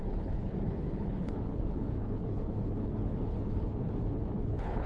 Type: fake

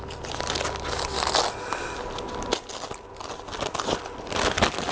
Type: real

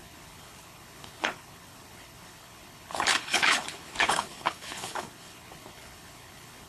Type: fake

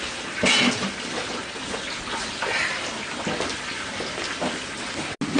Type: real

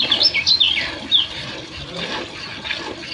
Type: real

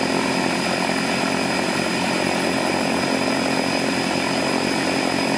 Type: real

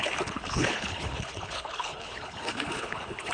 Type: fake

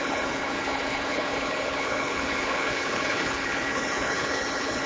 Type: fake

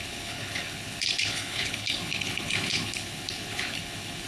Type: fake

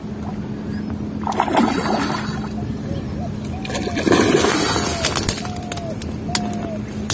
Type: real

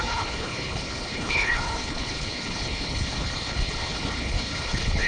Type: fake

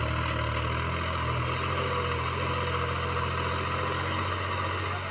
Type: real